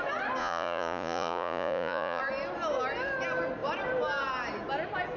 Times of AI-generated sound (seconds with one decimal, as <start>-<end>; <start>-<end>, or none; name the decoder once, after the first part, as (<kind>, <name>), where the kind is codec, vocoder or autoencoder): 0.4-2.2 (vocoder, Vocos)